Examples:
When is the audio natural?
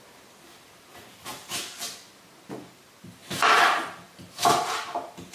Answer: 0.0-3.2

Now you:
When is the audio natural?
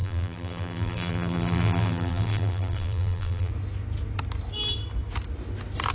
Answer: 3.5-5.9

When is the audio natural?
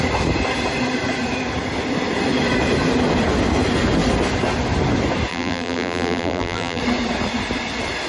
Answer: 0.0-5.3; 6.8-8.1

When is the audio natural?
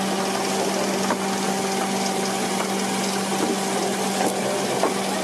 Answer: 0.0-5.2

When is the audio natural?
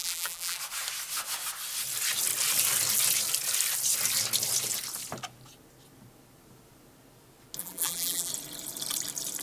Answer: 0.6-7.6; 8.3-9.4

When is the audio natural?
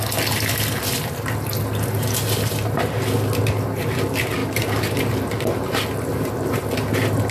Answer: 0.0-4.4; 5.1-7.3